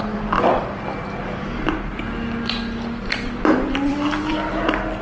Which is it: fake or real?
fake